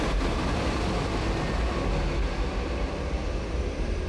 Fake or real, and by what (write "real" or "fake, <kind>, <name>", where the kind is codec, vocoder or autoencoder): real